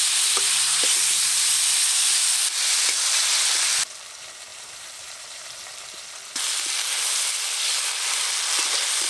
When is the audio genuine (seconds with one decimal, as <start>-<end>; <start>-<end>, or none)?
0.0-4.5; 6.4-9.1